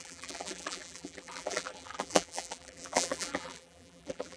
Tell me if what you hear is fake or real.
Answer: fake